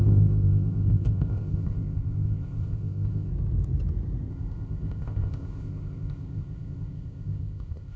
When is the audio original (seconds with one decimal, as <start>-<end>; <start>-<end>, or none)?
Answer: 3.3-4.3